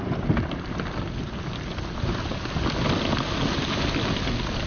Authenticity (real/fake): real